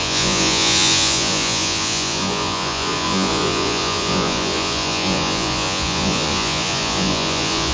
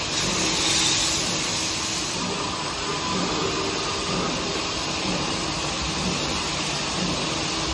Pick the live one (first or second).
second